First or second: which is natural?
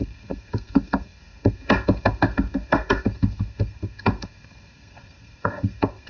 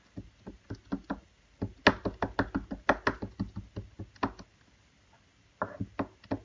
second